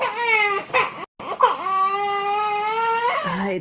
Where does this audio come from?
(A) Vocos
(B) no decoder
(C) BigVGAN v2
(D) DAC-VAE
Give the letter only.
B